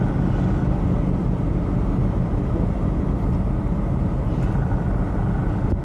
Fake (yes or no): no